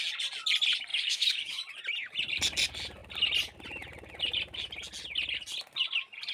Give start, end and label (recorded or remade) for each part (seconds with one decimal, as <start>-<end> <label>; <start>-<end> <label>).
0.0-0.9 recorded; 0.9-1.6 remade; 1.6-6.3 recorded